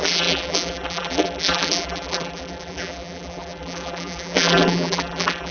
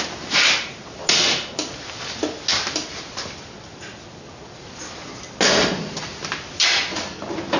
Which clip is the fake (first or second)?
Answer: first